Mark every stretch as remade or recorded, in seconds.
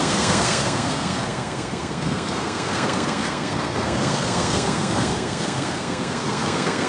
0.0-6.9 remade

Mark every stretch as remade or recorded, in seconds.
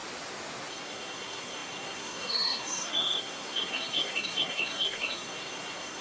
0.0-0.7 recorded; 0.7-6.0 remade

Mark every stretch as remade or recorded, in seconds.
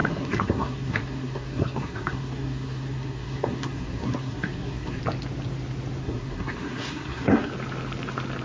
0.0-5.0 remade; 5.0-6.0 recorded; 6.0-7.5 remade; 7.5-8.4 recorded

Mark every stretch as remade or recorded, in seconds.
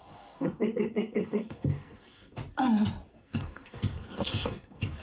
0.0-2.4 remade; 2.4-3.1 recorded; 3.1-5.0 remade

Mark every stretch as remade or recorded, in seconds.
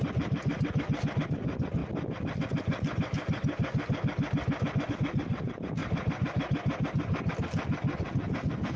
0.0-8.8 recorded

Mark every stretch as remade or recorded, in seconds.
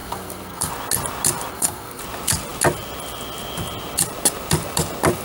0.0-0.7 remade; 0.7-1.5 recorded; 1.5-2.0 remade; 2.0-5.2 recorded